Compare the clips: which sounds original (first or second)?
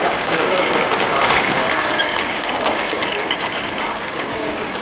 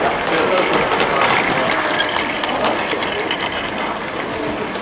second